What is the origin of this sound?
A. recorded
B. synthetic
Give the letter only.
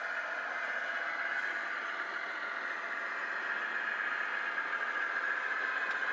A